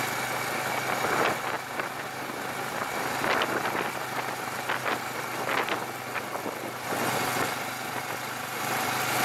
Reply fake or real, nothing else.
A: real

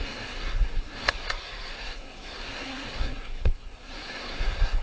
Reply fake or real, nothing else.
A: fake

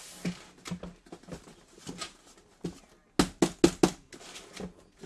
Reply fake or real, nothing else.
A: real